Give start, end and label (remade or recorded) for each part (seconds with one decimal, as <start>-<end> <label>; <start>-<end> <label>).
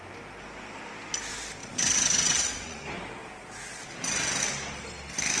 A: 0.0-1.6 recorded; 1.6-2.8 remade; 2.8-5.4 recorded